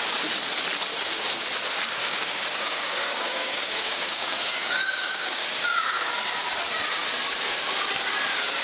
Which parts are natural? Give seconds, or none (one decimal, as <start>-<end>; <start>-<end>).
0.0-2.0; 6.1-8.6